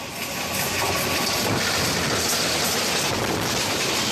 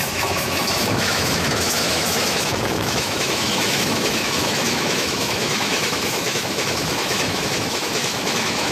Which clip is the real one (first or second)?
first